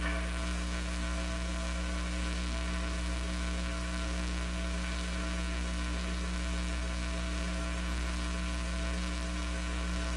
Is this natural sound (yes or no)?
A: no